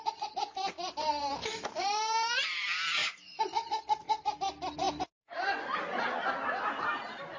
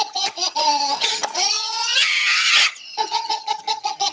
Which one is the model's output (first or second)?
second